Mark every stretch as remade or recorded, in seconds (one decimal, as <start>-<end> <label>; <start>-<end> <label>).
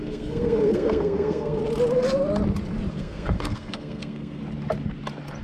0.0-1.6 remade; 1.6-2.9 recorded; 2.9-4.4 remade; 4.4-5.4 recorded